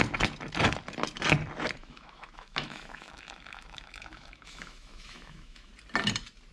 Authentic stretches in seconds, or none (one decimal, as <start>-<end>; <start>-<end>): 0.0-1.8; 5.7-6.5